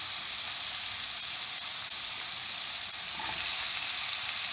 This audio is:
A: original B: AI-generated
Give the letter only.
A